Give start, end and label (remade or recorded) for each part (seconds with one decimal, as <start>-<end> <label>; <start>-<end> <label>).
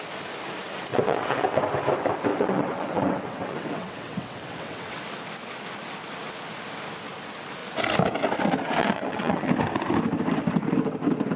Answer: 0.0-0.9 recorded; 0.9-1.6 remade; 1.6-2.3 recorded; 2.3-5.0 remade; 5.0-8.8 recorded; 8.8-9.5 remade; 9.5-11.4 recorded